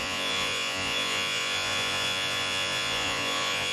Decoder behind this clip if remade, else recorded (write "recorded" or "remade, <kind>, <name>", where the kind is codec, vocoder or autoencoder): remade, vocoder, Vocos